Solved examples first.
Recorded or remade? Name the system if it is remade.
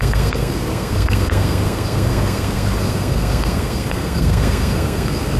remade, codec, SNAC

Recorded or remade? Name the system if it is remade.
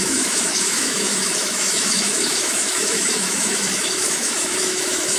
remade, autoencoder, DAC-VAE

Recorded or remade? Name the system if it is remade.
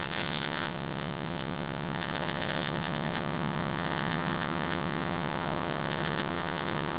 remade, vocoder, WaveNeXt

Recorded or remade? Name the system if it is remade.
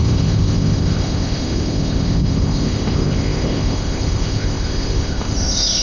remade, codec, ZipCodec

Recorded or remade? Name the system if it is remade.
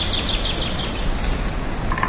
recorded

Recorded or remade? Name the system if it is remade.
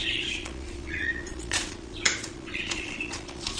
remade, vocoder, Vocos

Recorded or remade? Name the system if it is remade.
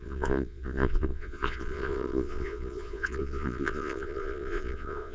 remade, vocoder, Vocos